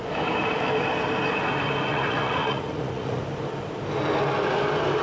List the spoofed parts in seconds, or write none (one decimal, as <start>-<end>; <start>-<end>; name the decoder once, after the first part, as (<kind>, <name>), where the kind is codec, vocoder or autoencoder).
1.9-3.2 (vocoder, Vocos)